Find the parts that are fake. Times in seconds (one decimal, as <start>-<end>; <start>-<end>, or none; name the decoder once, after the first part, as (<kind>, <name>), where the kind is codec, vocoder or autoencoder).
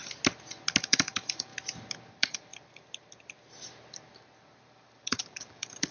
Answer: 0.8-1.5 (vocoder, BigVGAN v2); 2.1-2.5; 4.6-5.9